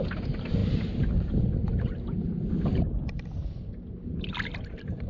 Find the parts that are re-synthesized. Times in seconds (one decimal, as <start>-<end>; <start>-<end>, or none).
none